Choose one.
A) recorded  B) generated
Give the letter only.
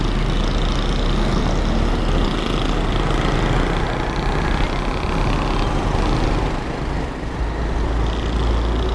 A